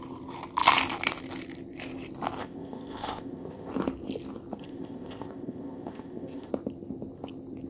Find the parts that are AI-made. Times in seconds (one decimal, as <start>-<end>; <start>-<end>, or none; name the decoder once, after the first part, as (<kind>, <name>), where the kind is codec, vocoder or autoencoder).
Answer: 2.4-3.7 (codec, ZipCodec); 4.6-6.5